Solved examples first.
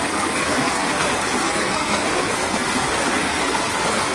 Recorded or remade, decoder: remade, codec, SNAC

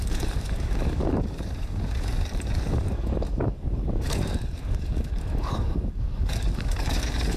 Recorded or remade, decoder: remade, codec, DAC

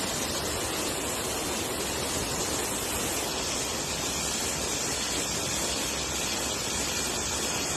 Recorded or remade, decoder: recorded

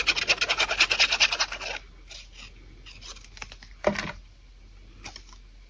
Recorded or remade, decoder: recorded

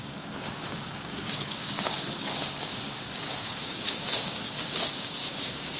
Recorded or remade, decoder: remade, codec, DAC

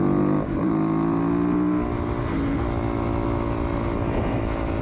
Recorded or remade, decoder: recorded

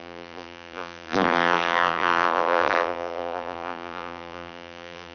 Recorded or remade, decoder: remade, vocoder, BigVGAN v2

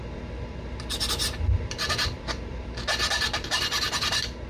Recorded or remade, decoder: remade, vocoder, BigVGAN v2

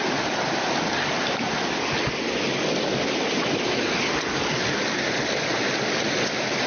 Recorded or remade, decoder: recorded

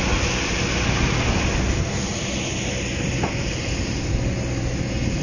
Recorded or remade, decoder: recorded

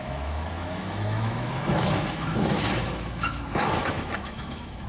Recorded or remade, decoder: remade, autoencoder, DAC-VAE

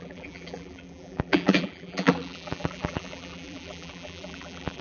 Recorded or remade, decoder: remade, vocoder, BigVGAN v2